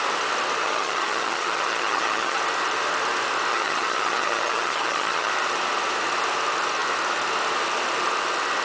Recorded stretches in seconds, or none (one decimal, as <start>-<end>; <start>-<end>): 0.0-0.6; 2.4-3.5; 5.3-8.6